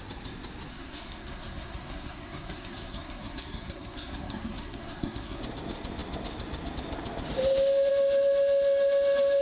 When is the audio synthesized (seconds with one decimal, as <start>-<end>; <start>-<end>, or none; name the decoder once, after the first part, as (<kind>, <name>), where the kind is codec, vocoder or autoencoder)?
0.7-5.4 (codec, SNAC)